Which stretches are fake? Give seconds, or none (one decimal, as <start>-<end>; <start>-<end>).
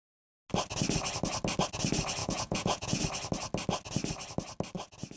2.2-3.0